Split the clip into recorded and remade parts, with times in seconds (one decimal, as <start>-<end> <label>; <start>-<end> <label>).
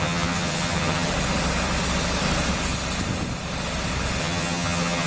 0.0-1.1 remade; 1.1-4.2 recorded; 4.2-5.1 remade